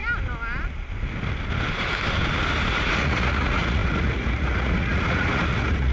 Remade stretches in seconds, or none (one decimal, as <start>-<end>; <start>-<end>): 2.7-5.9